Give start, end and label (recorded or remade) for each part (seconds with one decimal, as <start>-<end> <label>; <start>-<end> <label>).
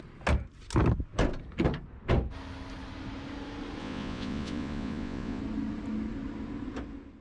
0.0-3.8 recorded; 3.8-5.4 remade; 5.4-7.2 recorded